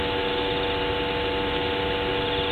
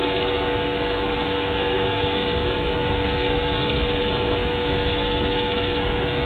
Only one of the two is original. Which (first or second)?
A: first